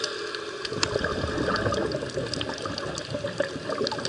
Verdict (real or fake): real